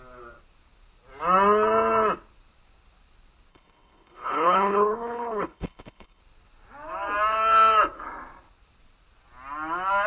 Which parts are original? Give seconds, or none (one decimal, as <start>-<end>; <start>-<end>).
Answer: 0.0-3.5; 6.2-10.1

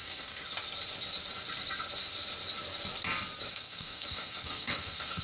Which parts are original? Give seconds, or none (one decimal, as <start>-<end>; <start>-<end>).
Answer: 0.4-3.5

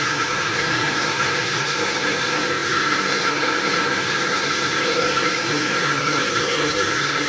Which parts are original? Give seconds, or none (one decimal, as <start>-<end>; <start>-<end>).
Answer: none

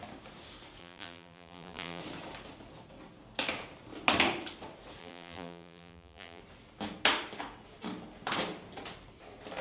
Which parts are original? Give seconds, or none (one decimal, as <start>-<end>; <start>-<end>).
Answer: 0.0-0.8; 2.0-5.0; 6.4-9.6

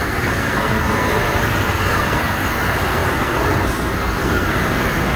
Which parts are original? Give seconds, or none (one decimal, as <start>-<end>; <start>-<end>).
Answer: none

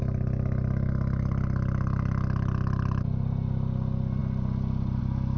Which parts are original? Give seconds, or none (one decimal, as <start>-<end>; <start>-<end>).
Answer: 0.0-5.4